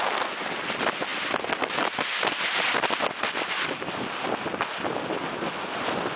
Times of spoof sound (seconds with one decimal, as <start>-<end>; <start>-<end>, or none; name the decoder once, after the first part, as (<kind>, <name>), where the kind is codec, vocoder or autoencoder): none